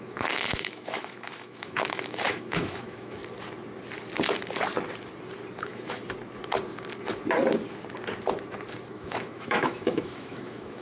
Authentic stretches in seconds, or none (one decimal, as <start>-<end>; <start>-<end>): 3.2-5.6; 6.0-8.9